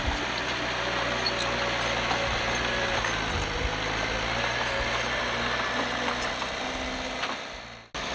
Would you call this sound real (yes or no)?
yes